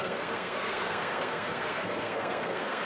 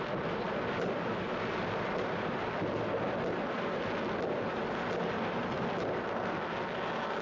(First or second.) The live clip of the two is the second